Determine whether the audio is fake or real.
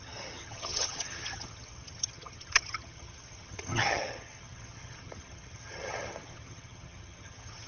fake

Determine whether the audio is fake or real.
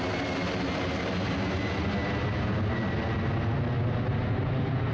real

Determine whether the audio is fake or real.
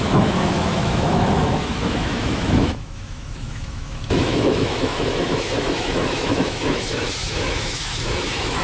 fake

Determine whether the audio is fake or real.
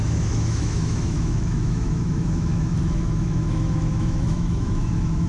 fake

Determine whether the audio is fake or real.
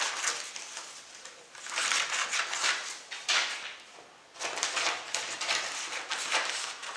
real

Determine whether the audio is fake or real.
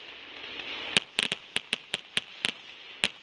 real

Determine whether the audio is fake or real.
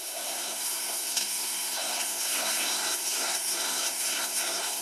fake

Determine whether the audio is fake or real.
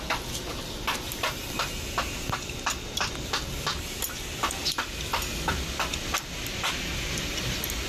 real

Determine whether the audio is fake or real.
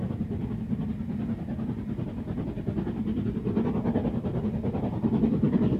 real